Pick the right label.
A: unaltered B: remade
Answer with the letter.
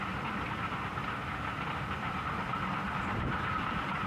A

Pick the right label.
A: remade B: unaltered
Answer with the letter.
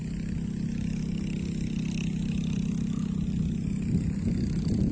B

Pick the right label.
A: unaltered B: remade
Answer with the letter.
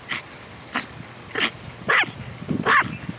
A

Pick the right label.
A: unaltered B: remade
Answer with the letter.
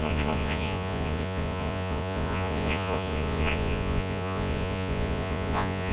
B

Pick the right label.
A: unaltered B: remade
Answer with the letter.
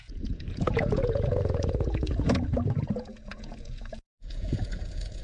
B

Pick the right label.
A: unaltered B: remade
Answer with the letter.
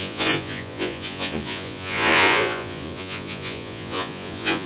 B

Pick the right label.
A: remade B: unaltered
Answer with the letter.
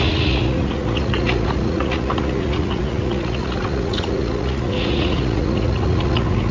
A